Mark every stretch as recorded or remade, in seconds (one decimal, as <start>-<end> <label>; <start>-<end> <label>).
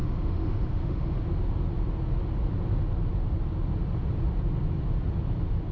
0.0-1.2 remade; 1.2-5.7 recorded